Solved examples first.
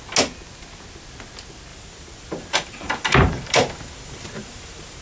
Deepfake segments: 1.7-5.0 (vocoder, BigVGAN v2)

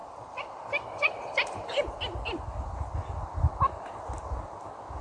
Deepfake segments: 0.0-1.9 (vocoder, BigVGAN v2)

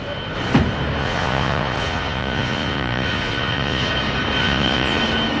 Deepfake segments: 1.0-3.9 (vocoder, Vocos); 4.4-5.0

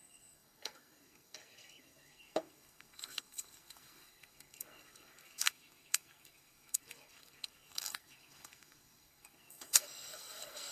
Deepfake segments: 0.0-10.7 (codec, SNAC)

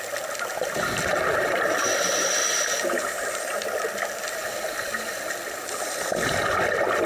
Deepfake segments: none

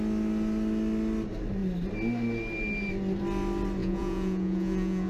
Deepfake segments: 3.8-5.1 (vocoder, Vocos)

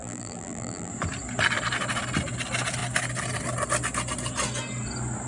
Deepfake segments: 0.0-0.9 (vocoder, BigVGAN v2)